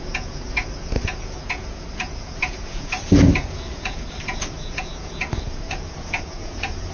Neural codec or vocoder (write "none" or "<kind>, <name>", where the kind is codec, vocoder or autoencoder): vocoder, Vocos